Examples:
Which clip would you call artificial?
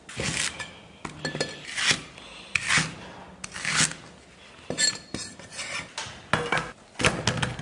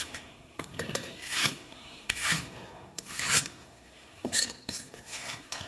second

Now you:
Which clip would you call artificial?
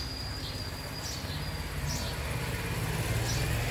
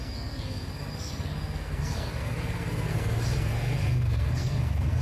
second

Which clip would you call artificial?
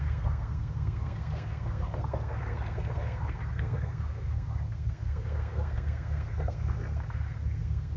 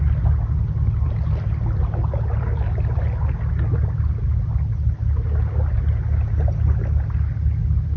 first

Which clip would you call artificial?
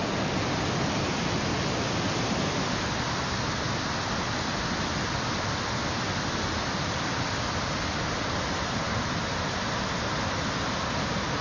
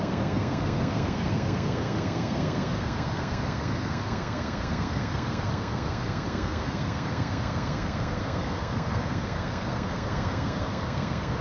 second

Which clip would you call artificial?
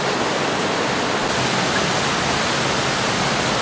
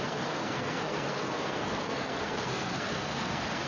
second